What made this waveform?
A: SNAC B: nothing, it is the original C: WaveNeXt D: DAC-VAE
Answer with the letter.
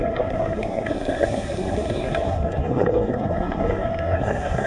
A